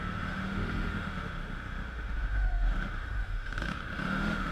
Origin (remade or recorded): remade